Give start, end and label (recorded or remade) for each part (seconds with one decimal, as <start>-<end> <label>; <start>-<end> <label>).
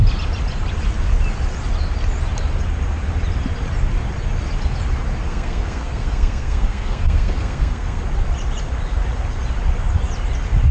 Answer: 0.0-5.3 recorded; 5.3-8.0 remade; 8.0-10.7 recorded